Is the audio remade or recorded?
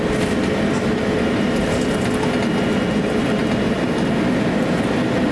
recorded